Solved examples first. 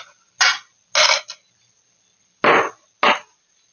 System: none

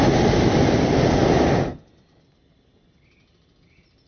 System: none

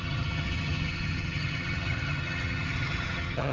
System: vocoder, HiFi-GAN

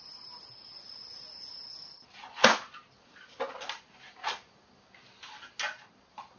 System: none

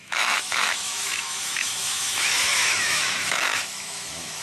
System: autoencoder, DAC-VAE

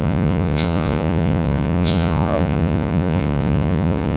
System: vocoder, Vocos